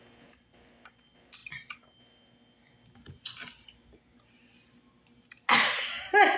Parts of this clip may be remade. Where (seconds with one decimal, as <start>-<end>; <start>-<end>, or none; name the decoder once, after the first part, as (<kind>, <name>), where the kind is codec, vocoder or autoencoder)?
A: none